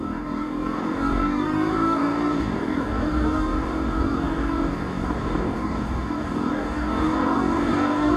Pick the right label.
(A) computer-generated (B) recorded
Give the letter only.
A